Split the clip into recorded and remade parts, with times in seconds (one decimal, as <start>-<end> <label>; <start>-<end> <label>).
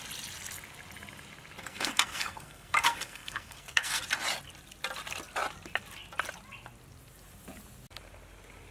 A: 0.0-1.6 recorded; 1.6-4.0 remade; 4.0-8.7 recorded